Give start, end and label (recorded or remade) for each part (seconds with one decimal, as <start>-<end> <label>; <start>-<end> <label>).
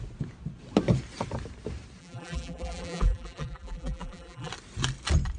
0.0-2.0 recorded; 2.0-4.5 remade; 4.5-5.4 recorded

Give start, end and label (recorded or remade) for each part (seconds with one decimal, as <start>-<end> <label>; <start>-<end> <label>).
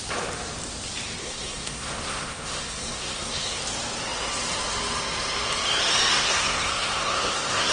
0.0-1.2 recorded; 1.2-3.6 remade; 3.6-6.1 recorded; 6.1-7.7 remade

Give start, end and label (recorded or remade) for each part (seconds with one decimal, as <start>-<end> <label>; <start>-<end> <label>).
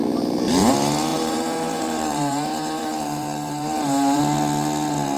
0.0-0.7 remade; 0.7-1.1 recorded; 1.1-4.2 remade; 4.2-5.2 recorded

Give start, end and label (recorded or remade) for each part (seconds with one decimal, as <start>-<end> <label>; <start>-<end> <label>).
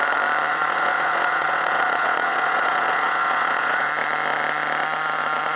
0.0-0.5 recorded; 0.5-3.9 remade; 3.9-5.6 recorded